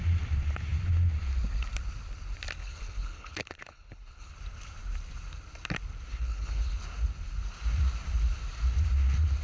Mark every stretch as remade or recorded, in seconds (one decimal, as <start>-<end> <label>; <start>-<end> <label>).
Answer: 0.0-2.6 recorded; 2.6-4.3 remade; 4.3-6.1 recorded; 6.1-6.8 remade; 6.8-9.4 recorded